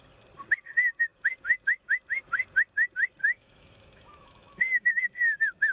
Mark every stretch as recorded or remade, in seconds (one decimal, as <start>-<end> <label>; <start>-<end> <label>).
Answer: 0.0-3.2 recorded; 3.2-4.9 remade; 4.9-5.7 recorded